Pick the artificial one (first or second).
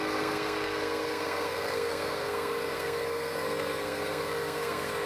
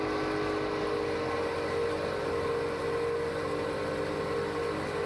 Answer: first